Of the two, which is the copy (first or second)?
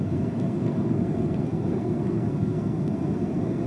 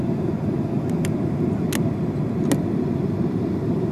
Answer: first